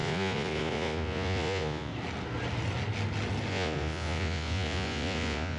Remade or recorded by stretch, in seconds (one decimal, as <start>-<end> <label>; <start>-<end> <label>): 0.0-1.9 remade; 1.9-3.5 recorded; 3.5-5.6 remade